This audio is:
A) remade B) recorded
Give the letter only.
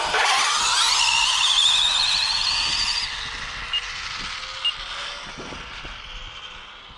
B